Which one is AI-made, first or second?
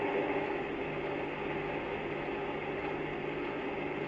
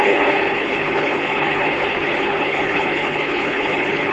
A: second